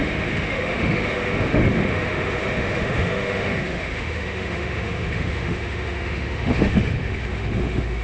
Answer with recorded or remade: remade